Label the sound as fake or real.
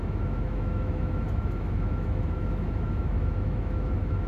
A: fake